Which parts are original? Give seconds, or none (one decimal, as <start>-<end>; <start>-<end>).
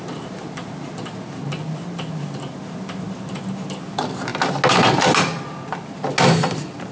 0.0-6.9